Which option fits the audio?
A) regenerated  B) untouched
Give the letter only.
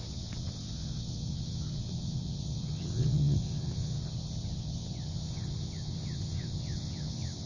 A